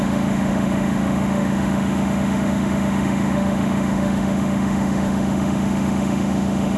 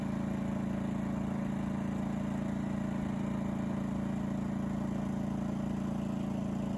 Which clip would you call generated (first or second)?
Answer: first